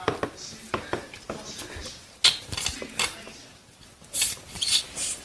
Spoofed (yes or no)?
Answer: no